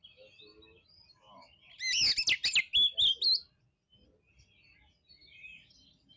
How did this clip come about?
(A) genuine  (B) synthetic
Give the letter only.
A